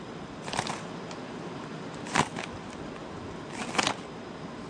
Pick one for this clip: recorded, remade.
recorded